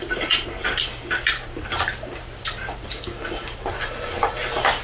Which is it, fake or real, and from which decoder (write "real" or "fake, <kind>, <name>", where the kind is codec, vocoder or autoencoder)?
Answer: real